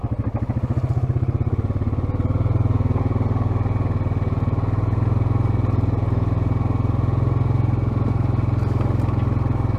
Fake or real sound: real